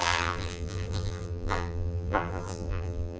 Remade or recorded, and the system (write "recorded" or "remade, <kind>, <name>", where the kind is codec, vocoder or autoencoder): remade, vocoder, BigVGAN v2